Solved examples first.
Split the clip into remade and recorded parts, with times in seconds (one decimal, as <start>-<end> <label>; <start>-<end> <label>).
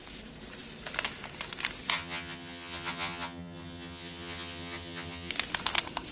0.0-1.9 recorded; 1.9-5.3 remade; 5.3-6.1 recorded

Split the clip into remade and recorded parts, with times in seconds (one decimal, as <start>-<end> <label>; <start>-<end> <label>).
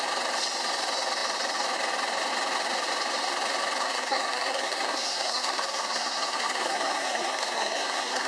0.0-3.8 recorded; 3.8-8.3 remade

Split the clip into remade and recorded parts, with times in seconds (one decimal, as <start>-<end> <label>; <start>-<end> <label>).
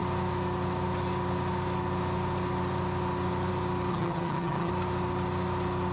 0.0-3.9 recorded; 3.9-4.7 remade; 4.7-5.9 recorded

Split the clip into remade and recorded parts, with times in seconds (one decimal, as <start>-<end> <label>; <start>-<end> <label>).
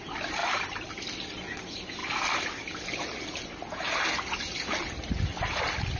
0.0-6.0 recorded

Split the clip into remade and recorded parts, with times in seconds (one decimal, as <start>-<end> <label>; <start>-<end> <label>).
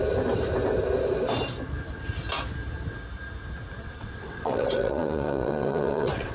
0.0-3.8 recorded; 3.8-6.3 remade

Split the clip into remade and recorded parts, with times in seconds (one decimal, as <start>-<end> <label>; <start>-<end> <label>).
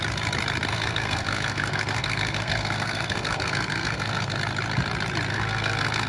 0.0-0.7 recorded; 0.7-4.4 remade; 4.4-5.3 recorded; 5.3-6.1 remade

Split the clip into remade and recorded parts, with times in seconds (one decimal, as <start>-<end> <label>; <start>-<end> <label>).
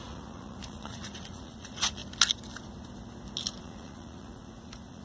0.0-2.0 remade; 2.0-3.6 recorded; 3.6-5.0 remade